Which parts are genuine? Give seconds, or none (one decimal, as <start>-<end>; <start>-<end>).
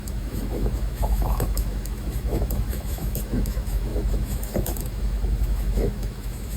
none